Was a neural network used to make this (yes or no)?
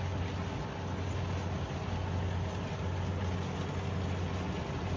no